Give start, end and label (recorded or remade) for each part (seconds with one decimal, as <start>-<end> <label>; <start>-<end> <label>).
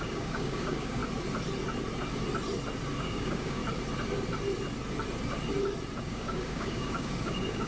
0.0-1.0 remade; 1.0-3.0 recorded; 3.0-3.6 remade; 3.6-6.0 recorded; 6.0-7.7 remade